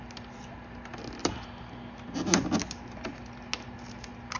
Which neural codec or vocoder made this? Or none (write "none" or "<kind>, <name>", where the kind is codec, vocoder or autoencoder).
none